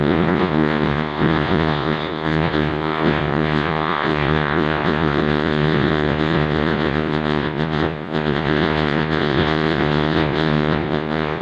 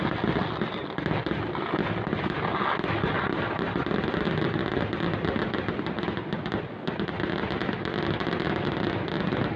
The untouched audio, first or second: second